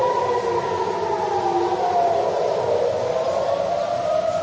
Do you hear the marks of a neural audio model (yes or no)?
no